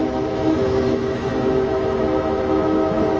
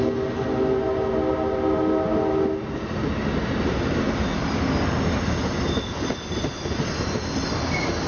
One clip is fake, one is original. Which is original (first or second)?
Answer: second